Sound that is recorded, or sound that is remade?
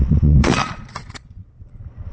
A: remade